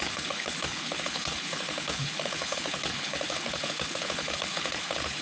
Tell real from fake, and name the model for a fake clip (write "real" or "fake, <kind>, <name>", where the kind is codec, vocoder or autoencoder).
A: fake, codec, HILCodec